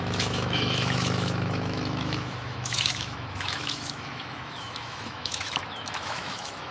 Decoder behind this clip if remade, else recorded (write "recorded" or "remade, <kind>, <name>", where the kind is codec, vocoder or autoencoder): remade, autoencoder, DAC-VAE